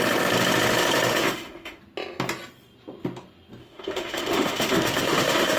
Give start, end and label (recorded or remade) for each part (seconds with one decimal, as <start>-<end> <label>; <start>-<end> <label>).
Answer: 0.0-1.1 recorded; 1.1-1.8 remade; 1.8-3.6 recorded; 3.6-5.6 remade